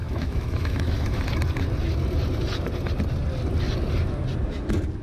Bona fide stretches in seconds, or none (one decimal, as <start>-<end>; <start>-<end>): 1.2-5.0